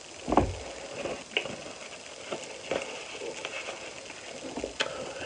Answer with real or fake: real